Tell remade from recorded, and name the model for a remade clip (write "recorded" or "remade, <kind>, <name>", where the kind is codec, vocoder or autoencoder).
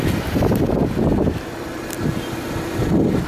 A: recorded